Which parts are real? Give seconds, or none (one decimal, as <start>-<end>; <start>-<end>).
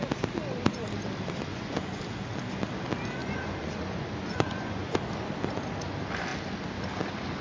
0.0-1.5; 2.0-3.2; 5.0-7.4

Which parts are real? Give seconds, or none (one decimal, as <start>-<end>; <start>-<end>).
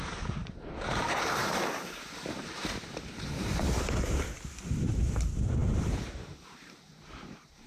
none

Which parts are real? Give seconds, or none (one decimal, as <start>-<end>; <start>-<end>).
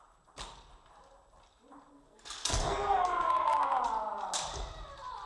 0.0-1.9; 3.8-5.3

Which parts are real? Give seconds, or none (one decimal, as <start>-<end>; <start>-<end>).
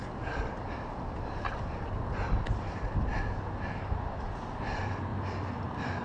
0.0-1.4; 3.1-4.6; 5.1-5.6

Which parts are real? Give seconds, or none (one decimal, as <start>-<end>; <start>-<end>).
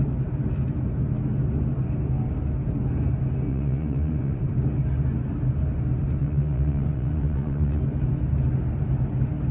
0.0-3.5; 4.4-6.2; 7.8-9.5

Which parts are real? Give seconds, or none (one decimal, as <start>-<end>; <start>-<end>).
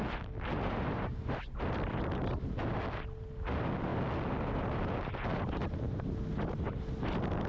0.0-0.5; 1.6-7.5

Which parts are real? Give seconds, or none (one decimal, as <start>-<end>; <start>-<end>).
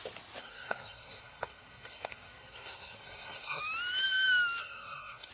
0.0-0.4; 3.6-4.6